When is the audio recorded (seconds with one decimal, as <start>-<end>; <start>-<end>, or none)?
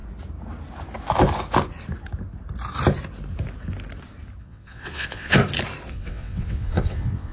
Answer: 0.0-4.4; 5.4-5.9